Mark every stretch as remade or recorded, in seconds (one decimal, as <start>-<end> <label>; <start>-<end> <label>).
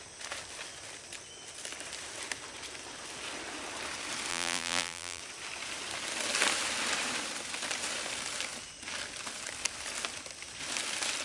0.0-4.3 recorded; 4.3-5.2 remade; 5.2-11.2 recorded